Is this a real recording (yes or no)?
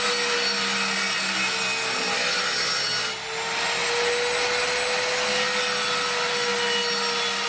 yes